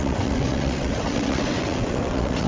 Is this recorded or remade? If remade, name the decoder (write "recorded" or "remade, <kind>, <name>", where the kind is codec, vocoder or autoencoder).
remade, vocoder, WaveNeXt